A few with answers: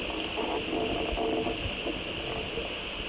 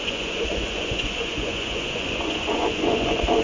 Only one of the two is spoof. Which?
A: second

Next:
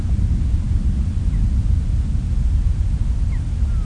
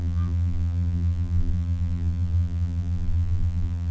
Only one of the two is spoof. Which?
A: second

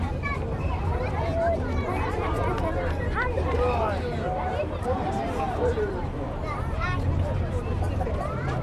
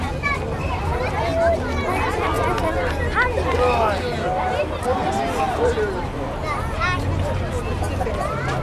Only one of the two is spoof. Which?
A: first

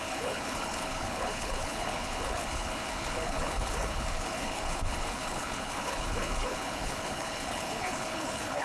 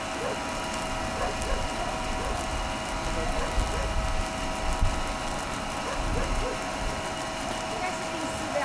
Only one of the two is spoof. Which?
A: first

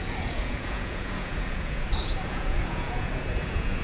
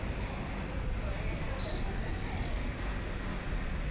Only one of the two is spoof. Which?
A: first